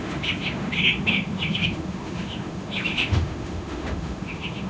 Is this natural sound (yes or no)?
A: no